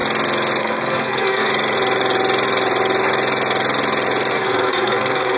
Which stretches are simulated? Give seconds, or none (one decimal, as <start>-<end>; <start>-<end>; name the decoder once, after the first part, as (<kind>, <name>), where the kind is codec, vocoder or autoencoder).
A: 0.6-1.5 (codec, SNAC); 4.3-5.4